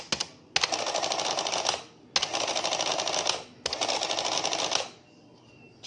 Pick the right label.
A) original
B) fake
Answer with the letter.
A